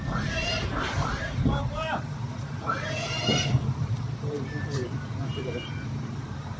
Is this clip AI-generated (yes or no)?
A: yes